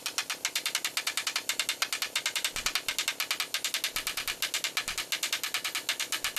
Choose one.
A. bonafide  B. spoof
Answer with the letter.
A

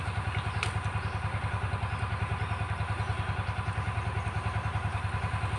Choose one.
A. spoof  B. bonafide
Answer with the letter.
B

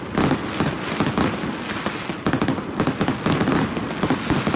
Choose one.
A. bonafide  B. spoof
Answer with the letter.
A